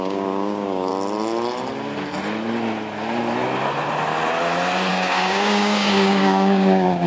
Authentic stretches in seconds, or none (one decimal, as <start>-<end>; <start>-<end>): 0.9-4.9